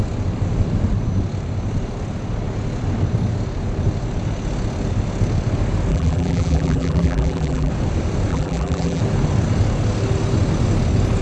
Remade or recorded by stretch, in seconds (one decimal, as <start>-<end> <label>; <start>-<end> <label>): 0.0-5.9 recorded; 5.9-7.7 remade; 7.7-8.3 recorded; 8.3-9.0 remade; 9.0-11.2 recorded